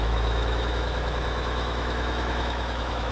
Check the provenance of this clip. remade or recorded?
remade